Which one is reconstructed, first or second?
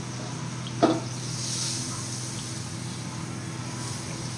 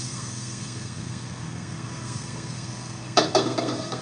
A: second